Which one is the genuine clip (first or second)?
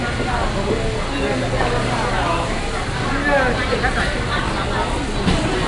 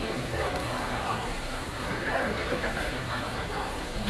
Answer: first